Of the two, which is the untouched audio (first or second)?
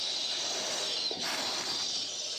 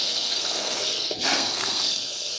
first